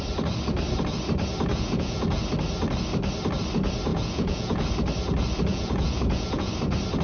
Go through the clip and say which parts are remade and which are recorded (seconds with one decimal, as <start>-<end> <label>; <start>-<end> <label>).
0.0-1.5 recorded; 1.5-2.2 remade; 2.2-3.9 recorded; 3.9-4.7 remade; 4.7-5.5 recorded; 5.5-6.5 remade; 6.5-7.0 recorded